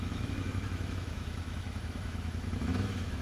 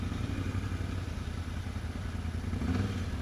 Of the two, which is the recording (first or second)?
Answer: second